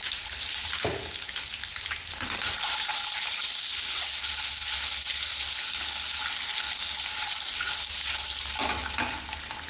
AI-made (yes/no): no